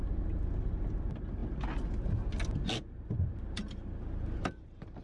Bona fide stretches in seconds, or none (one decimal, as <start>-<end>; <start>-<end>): 0.0-5.0